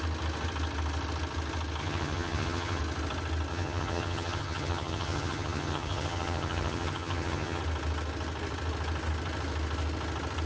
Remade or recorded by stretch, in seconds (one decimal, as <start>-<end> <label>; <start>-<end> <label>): 0.0-1.8 recorded; 1.8-2.8 remade; 2.8-3.5 recorded; 3.5-7.6 remade; 7.6-10.5 recorded